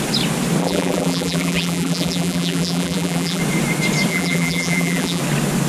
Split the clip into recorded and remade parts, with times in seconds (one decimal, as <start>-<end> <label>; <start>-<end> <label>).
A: 0.0-0.6 recorded; 0.6-3.4 remade; 3.4-4.1 recorded; 4.1-5.2 remade; 5.2-5.7 recorded